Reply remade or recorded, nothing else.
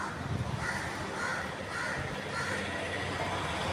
recorded